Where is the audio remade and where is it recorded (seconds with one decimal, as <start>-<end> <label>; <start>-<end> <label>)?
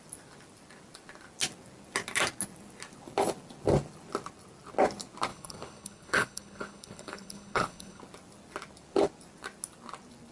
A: 0.0-5.3 recorded; 5.3-8.0 remade; 8.0-10.3 recorded